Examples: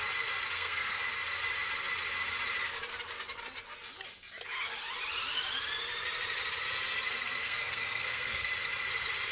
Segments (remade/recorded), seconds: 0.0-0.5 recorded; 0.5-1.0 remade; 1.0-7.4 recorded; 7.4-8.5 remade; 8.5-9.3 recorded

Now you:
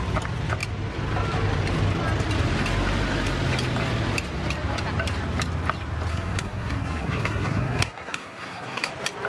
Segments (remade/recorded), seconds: 0.0-6.1 recorded; 6.1-8.9 remade; 8.9-9.3 recorded